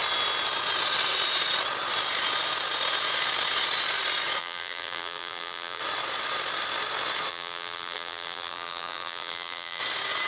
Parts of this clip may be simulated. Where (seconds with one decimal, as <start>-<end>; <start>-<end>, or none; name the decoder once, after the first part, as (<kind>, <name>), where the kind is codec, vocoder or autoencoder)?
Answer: 4.4-5.8 (vocoder, BigVGAN v2); 7.3-9.8